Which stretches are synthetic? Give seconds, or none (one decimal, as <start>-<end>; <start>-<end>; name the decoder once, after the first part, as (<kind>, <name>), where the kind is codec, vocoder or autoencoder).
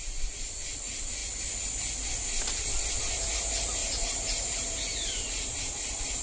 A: 3.8-6.2 (vocoder, BigVGAN v2)